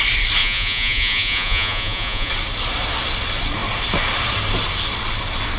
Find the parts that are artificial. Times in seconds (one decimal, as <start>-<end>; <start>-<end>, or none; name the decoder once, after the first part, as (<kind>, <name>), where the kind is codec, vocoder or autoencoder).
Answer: 0.4-2.3 (vocoder, Vocos)